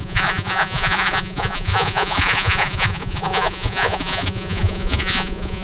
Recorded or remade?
remade